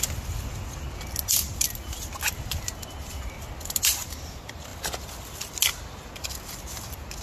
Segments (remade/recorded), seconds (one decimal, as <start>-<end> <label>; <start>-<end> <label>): 0.0-7.2 recorded